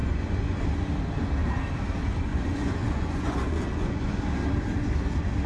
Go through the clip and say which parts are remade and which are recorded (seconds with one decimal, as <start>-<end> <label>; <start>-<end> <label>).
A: 0.0-0.6 remade; 0.6-2.3 recorded; 2.3-4.2 remade; 4.2-5.5 recorded